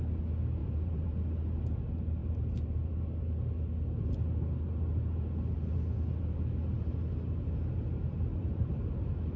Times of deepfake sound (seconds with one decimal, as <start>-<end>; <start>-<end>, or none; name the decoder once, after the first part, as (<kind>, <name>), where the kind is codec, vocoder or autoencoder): 0.6-1.2 (vocoder, BigVGAN v2); 2.2-3.0; 8.3-8.9